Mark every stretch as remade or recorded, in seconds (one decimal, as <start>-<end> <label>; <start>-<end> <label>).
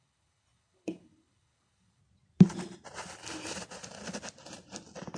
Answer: 0.0-2.0 remade; 2.0-5.2 recorded